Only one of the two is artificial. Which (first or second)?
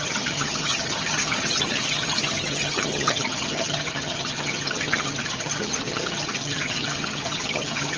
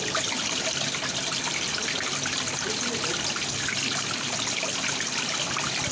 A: first